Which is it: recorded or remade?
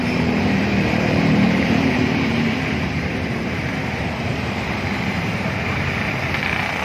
remade